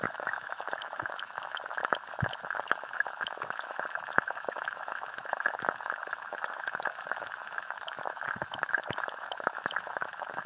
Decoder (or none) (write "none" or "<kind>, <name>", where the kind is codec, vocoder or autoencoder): autoencoder, DAC-VAE